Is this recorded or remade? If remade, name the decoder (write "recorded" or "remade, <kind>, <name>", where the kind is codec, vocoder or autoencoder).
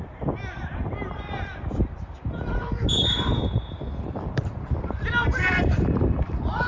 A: remade, vocoder, BigVGAN v2